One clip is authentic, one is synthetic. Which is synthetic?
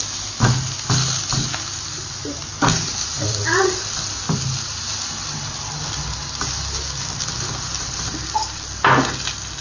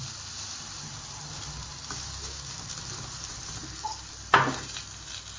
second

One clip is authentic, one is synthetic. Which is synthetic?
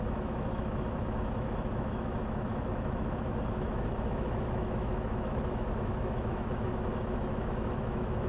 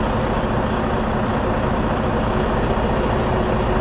first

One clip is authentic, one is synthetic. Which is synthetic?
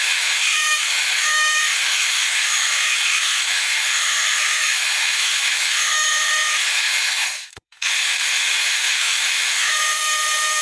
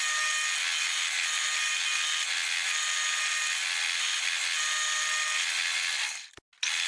first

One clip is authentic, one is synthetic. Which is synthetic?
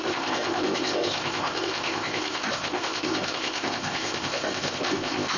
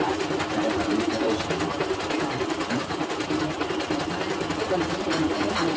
first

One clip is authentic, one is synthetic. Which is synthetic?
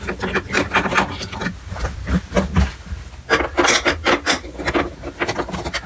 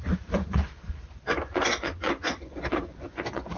second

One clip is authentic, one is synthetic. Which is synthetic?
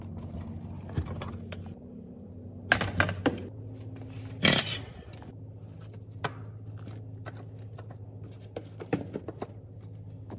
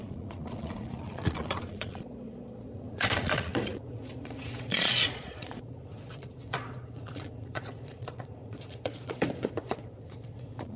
second